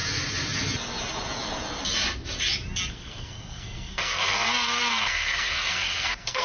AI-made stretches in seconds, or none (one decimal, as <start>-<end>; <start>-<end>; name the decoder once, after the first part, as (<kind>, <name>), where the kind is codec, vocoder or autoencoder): 2.9-6.4 (codec, SNAC)